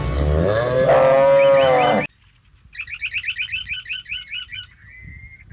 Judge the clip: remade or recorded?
recorded